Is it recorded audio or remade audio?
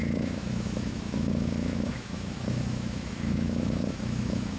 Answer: remade